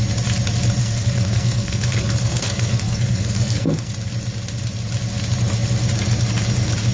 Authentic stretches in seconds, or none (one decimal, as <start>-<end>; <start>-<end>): 0.0-0.8; 3.9-6.9